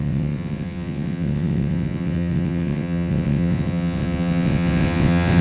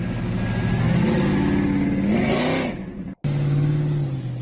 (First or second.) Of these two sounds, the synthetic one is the first